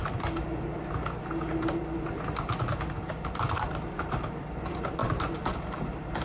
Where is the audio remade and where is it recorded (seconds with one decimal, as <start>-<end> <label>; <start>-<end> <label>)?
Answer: 0.0-3.7 recorded; 3.7-6.2 remade